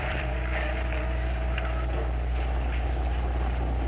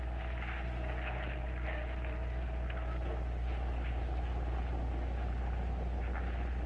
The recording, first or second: second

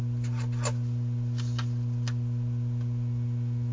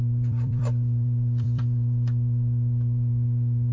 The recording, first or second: first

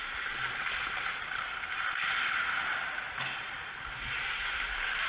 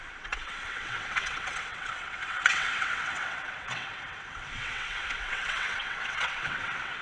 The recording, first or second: first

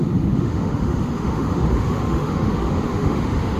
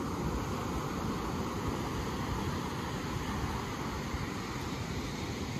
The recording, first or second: second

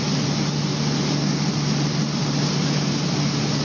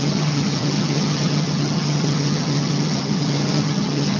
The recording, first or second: first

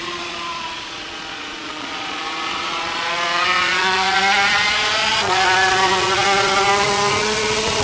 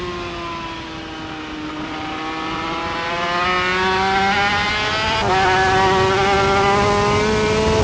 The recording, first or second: second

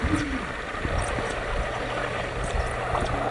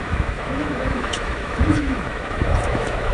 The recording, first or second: first